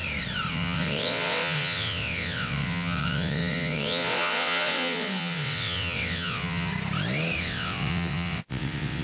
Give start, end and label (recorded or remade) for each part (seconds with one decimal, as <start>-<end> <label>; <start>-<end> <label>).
0.0-0.5 recorded; 0.5-6.7 remade; 6.7-7.4 recorded; 7.4-9.0 remade